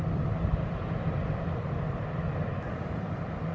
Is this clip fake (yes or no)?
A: no